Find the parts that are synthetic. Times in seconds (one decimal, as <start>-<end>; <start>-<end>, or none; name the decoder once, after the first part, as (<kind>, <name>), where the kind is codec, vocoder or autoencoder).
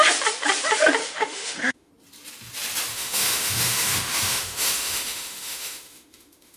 1.0-1.9 (autoencoder, DAC-VAE); 2.9-6.6